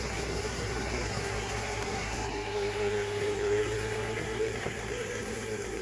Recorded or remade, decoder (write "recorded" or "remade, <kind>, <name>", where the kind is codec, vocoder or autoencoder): remade, codec, SNAC